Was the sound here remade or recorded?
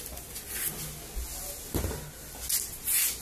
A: recorded